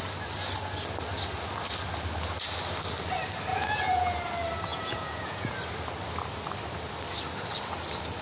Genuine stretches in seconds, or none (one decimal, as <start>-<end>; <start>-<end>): 0.0-3.5; 4.2-4.7; 5.5-8.2

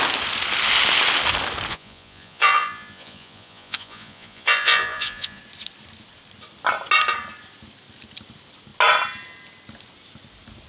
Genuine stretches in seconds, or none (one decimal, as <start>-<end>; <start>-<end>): 0.0-1.7; 5.4-10.7

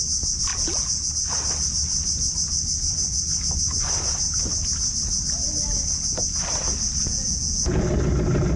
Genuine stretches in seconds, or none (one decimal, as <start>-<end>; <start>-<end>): 0.0-0.5; 1.1-7.0; 7.9-8.6

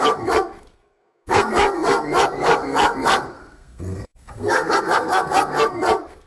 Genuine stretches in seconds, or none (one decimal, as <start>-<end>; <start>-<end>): none

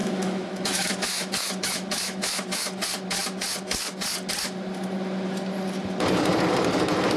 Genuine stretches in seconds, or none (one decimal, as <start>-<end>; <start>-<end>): 2.8-7.2

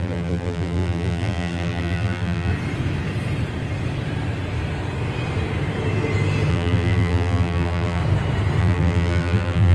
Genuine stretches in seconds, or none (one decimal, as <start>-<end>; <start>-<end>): 2.5-6.5; 8.0-8.6